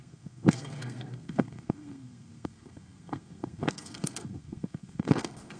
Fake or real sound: fake